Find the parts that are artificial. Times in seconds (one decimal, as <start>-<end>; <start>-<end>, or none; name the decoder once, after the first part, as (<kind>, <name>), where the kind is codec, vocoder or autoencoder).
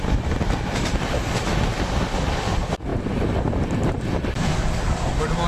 2.9-4.2 (vocoder, BigVGAN v2)